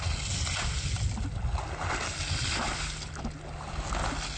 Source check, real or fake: real